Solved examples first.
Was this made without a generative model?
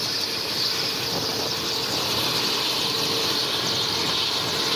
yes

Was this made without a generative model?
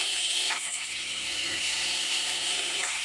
no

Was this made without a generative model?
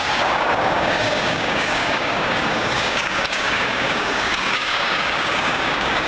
no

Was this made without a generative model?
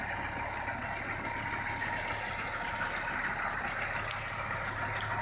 yes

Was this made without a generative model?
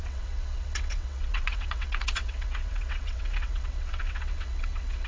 no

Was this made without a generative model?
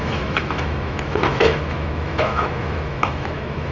no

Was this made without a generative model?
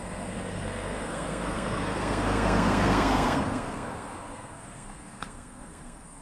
no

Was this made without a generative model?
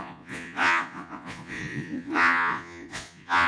no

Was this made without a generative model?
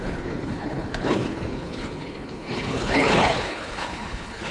no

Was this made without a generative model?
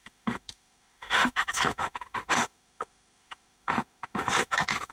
no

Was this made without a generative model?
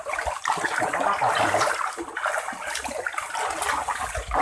yes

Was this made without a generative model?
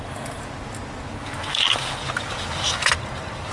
yes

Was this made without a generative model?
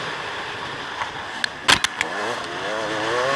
yes